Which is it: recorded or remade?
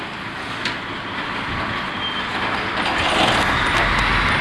recorded